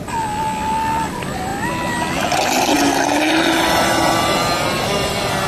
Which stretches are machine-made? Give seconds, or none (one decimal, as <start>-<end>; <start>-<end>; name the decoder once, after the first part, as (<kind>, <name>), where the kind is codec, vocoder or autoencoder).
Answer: none